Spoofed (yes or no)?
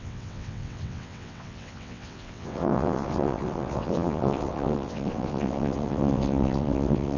yes